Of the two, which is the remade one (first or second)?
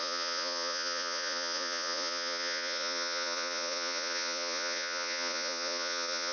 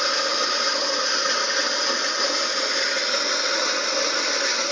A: first